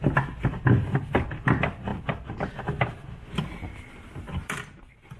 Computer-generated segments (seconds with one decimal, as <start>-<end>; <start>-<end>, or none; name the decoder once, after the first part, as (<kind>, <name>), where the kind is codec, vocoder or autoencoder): none